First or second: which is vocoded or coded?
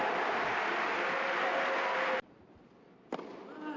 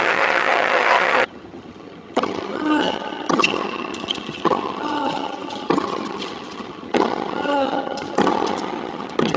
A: second